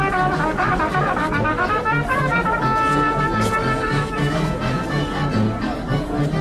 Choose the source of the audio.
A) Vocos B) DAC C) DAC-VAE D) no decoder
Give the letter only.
B